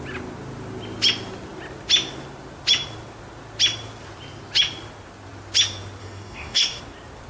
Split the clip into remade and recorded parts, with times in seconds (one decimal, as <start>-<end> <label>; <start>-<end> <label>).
0.0-6.0 recorded; 6.0-6.8 remade; 6.8-7.3 recorded